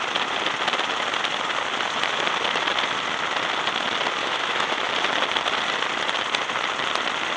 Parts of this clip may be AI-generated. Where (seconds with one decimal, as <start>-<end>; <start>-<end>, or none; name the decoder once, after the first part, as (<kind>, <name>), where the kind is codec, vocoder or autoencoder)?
4.2-4.9 (autoencoder, DAC-VAE)